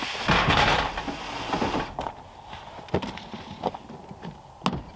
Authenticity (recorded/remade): recorded